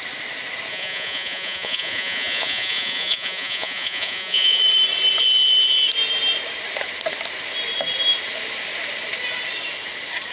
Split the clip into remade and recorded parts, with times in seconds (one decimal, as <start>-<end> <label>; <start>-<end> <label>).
0.0-0.7 recorded; 0.7-4.6 remade; 4.6-10.3 recorded